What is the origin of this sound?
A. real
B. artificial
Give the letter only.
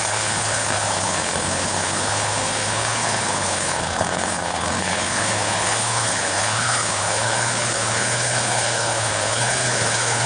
B